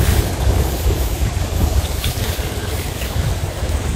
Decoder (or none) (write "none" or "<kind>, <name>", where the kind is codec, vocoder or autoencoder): codec, DAC